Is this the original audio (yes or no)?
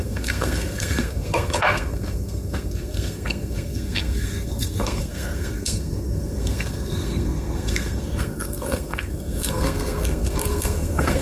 no